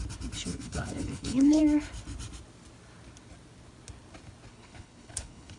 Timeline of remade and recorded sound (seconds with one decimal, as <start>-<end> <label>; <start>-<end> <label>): 0.0-0.5 recorded; 0.5-1.6 remade; 1.6-4.5 recorded; 4.5-5.6 remade